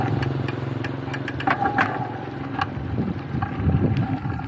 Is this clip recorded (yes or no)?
yes